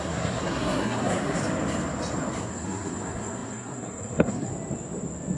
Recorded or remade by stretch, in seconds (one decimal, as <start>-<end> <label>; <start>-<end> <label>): 0.0-1.4 remade; 1.4-2.4 recorded; 2.4-4.5 remade; 4.5-5.4 recorded